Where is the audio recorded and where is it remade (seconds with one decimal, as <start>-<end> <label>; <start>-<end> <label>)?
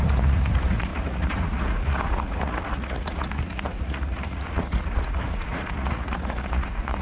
0.0-7.0 remade